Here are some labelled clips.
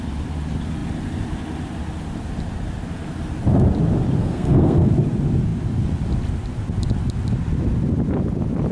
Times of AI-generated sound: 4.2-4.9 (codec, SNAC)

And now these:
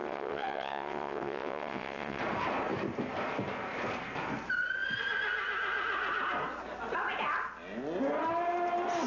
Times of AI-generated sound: 0.0-2.2 (vocoder, WaveNeXt)

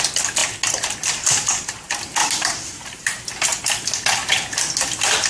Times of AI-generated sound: 2.2-3.3 (vocoder, BigVGAN v2)

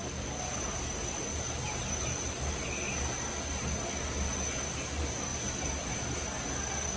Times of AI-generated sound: 1.3-2.3 (vocoder, BigVGAN v2); 5.3-6.0